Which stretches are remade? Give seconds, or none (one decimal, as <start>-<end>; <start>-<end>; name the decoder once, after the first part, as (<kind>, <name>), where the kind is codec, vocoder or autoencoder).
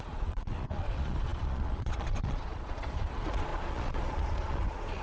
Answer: 0.0-5.0 (vocoder, Vocos)